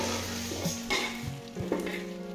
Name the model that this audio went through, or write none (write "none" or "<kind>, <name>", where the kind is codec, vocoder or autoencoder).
none